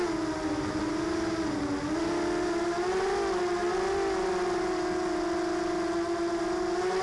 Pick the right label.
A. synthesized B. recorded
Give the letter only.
B